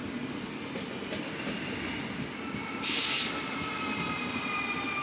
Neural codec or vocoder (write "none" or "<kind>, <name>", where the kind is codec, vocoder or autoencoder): none